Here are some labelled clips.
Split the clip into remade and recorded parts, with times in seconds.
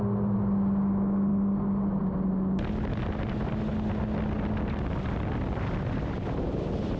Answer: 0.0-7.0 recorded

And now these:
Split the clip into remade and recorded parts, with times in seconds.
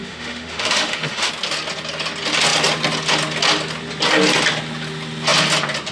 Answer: 0.0-1.3 remade; 1.3-5.9 recorded